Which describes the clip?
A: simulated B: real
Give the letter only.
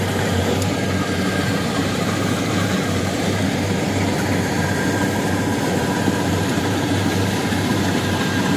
A